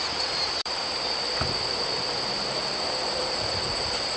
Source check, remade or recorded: remade